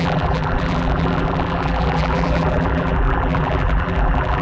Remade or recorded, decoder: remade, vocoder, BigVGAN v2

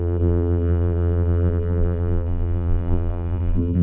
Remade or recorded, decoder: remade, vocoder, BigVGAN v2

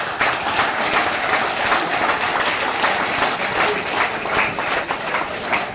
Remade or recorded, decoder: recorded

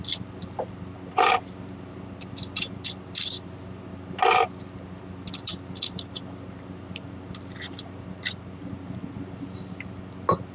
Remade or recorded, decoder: remade, vocoder, BigVGAN v2